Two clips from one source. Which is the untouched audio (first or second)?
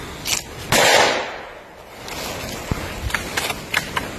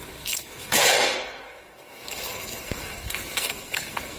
first